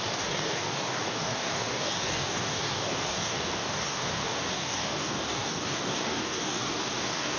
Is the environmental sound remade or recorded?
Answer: remade